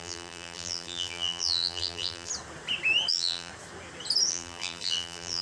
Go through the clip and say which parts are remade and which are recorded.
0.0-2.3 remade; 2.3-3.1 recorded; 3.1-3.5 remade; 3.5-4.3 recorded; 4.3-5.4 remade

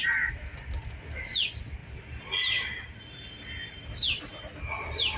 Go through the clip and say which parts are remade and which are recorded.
0.0-5.2 recorded

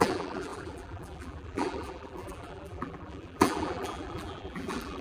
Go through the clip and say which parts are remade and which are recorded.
0.0-5.0 remade